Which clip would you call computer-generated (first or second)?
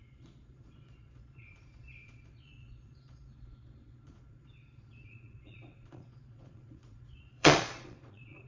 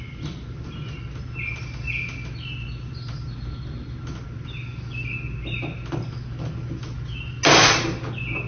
first